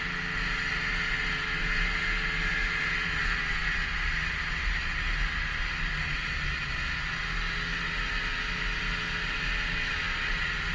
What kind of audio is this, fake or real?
real